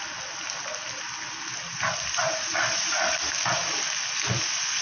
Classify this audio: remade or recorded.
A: recorded